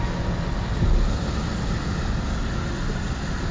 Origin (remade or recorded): recorded